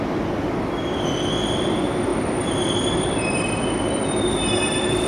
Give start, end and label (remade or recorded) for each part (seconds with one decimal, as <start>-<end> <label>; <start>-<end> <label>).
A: 0.0-2.1 recorded; 2.1-5.1 remade

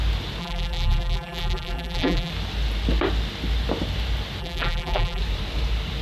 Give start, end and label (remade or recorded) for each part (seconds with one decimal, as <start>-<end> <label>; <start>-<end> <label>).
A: 0.0-0.4 recorded; 0.4-2.3 remade; 2.3-4.4 recorded; 4.4-5.2 remade; 5.2-6.0 recorded

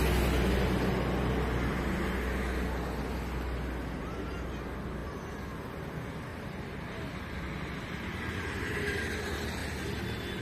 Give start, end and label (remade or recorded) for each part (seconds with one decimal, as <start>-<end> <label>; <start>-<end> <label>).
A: 0.0-6.3 recorded; 6.3-7.3 remade; 7.3-10.4 recorded

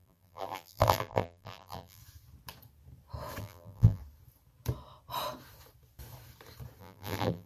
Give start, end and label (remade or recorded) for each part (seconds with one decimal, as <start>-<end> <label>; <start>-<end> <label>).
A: 0.0-2.0 remade; 2.0-3.4 recorded; 3.4-4.0 remade; 4.0-6.8 recorded; 6.8-7.5 remade

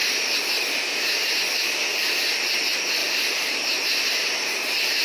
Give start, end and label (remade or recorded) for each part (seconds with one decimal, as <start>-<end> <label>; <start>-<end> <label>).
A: 0.0-1.3 remade; 1.3-3.0 recorded; 3.0-4.5 remade; 4.5-5.0 recorded

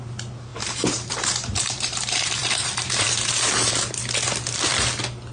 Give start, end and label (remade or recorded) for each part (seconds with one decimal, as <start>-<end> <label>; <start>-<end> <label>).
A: 0.0-0.5 recorded; 0.5-3.7 remade; 3.7-5.3 recorded

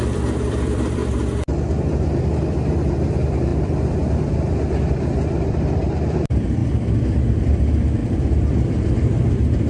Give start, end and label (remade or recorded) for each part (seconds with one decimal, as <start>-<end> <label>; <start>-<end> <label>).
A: 0.0-1.0 remade; 1.0-3.1 recorded; 3.1-9.7 remade

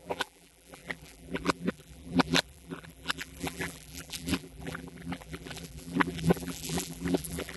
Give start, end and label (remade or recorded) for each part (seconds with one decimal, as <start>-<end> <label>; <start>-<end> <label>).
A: 0.0-7.6 remade